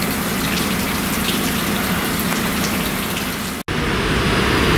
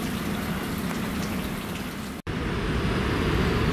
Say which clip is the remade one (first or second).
second